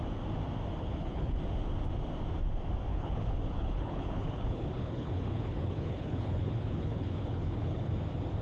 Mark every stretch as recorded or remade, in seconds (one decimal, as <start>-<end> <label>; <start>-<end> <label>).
0.0-0.8 recorded; 0.8-1.4 remade; 1.4-2.9 recorded; 2.9-7.9 remade; 7.9-8.4 recorded